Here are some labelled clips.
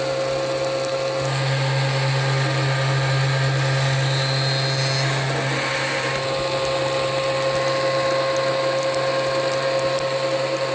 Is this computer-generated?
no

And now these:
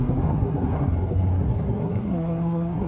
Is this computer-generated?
yes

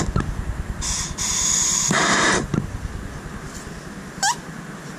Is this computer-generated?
no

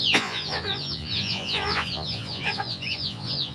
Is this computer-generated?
yes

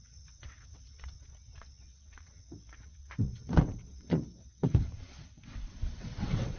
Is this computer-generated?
yes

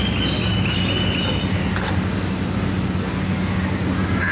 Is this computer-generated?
no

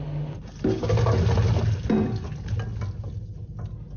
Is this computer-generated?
no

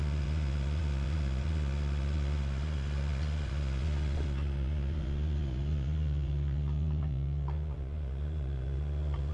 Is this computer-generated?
yes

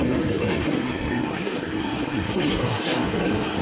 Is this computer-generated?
yes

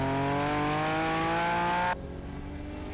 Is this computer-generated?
no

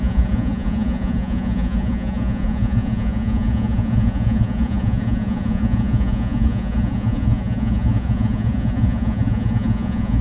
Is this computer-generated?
yes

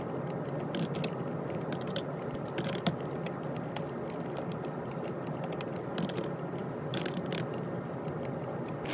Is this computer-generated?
no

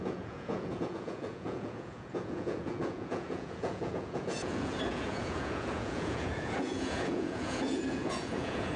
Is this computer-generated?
yes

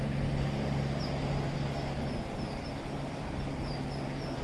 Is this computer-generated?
no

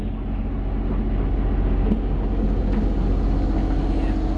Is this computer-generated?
no